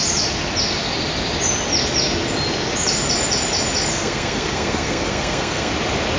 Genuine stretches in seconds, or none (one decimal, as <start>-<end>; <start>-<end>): 0.0-3.9; 5.7-6.2